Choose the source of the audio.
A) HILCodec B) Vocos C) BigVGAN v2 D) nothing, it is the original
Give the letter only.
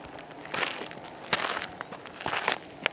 D